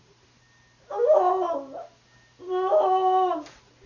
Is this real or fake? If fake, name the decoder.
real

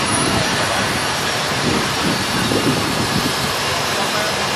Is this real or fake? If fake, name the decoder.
fake, vocoder, BigVGAN v2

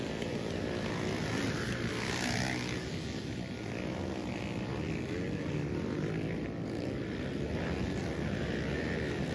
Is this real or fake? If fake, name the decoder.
real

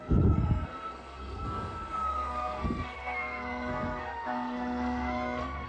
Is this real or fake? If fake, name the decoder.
fake, codec, SNAC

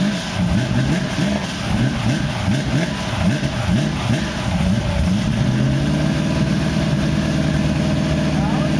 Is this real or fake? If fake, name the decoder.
real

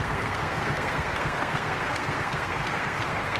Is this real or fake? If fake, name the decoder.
fake, codec, SNAC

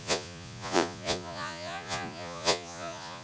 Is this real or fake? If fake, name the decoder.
fake, vocoder, Vocos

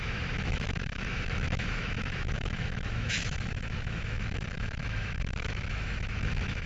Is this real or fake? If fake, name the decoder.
fake, autoencoder, DAC-VAE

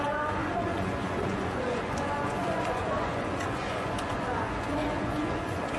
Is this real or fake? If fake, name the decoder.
fake, vocoder, Vocos